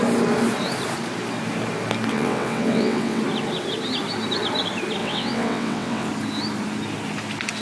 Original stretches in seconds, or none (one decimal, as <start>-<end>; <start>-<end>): 0.0-2.1; 3.2-5.0; 6.1-7.6